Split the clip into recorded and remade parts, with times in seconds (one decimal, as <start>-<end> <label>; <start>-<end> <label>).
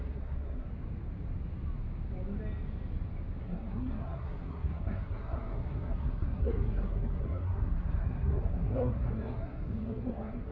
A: 0.0-0.7 remade; 0.7-3.4 recorded; 3.4-10.5 remade